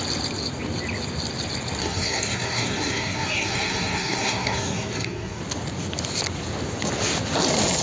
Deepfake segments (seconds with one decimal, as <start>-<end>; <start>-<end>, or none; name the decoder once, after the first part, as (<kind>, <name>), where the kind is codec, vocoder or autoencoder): 1.8-5.4 (codec, SNAC)